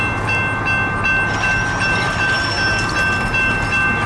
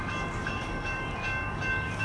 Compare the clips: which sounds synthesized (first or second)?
second